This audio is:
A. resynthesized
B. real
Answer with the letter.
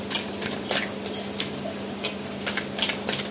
B